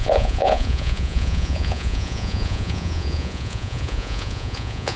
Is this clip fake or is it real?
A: fake